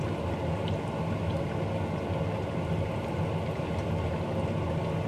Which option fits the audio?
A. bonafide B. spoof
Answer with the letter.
A